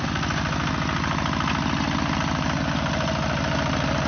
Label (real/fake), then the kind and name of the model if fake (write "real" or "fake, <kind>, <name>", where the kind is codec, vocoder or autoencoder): real